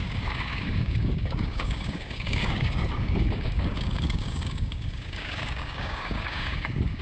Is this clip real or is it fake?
fake